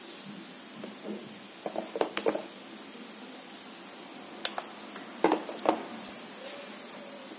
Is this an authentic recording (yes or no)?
yes